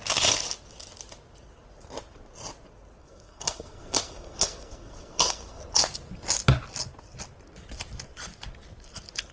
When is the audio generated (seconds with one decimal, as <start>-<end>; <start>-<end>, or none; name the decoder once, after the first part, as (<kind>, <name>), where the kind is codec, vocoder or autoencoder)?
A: 3.0-5.6 (codec, SNAC)